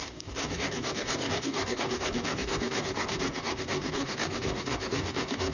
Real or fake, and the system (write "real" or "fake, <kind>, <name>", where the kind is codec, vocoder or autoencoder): fake, codec, DAC